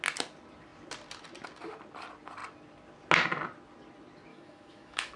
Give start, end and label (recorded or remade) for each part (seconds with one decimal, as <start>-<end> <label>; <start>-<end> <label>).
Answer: 0.0-4.3 recorded; 4.3-5.2 remade

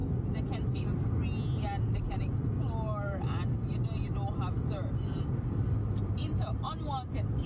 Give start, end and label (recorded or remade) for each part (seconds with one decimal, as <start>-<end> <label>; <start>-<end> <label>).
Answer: 0.0-7.5 recorded

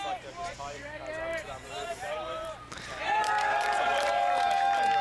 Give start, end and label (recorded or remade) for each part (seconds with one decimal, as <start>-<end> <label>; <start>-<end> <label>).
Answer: 0.0-1.3 recorded; 1.3-4.3 remade; 4.3-5.0 recorded

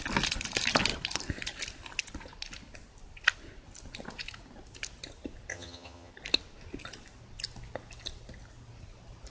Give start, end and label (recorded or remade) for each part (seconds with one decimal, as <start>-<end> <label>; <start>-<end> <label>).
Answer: 0.0-5.5 recorded; 5.5-6.1 remade; 6.1-9.3 recorded

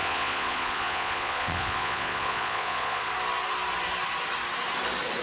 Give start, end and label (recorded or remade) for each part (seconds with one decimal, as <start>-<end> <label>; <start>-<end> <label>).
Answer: 0.0-3.1 remade; 3.1-5.2 recorded